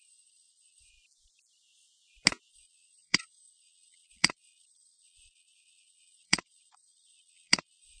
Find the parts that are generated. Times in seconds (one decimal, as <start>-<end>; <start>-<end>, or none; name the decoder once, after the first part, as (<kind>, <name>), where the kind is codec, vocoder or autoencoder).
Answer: 0.0-0.9 (vocoder, Vocos); 2.5-8.0